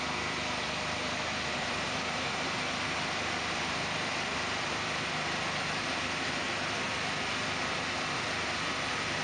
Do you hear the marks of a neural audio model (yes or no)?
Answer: yes